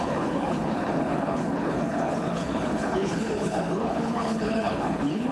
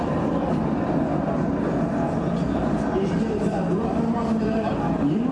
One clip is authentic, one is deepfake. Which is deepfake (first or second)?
first